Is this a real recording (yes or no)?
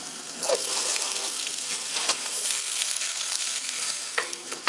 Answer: no